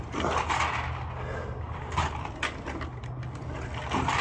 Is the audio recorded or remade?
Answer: recorded